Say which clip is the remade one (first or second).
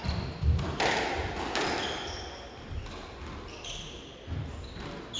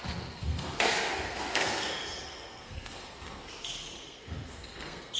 second